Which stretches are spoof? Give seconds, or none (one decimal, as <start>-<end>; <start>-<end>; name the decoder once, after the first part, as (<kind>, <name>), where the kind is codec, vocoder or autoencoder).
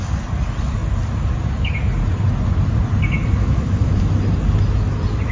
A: 3.4-4.0 (autoencoder, DAC-VAE)